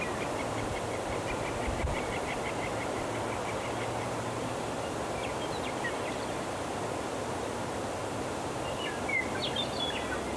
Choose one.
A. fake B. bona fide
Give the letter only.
B